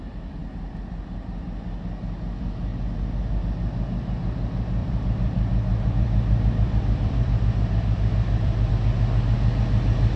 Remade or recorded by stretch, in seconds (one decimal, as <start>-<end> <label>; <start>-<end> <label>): 0.0-4.8 recorded; 4.8-8.7 remade; 8.7-10.2 recorded